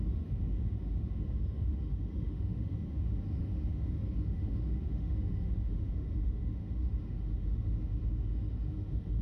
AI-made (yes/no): yes